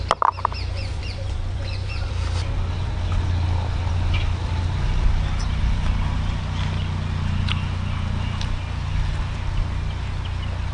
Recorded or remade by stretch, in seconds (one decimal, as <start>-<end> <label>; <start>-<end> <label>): 0.0-0.7 recorded; 0.7-2.1 remade; 2.1-10.7 recorded

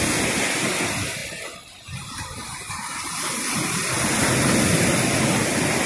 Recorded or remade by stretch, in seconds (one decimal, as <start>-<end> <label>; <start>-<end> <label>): 0.0-5.9 recorded